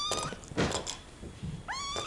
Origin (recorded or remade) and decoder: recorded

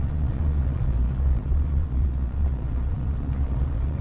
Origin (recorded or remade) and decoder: remade, vocoder, Vocos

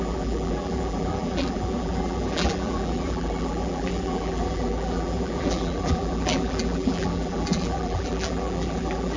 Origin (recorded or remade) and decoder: remade, vocoder, BigVGAN v2